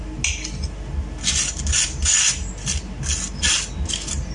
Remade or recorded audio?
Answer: recorded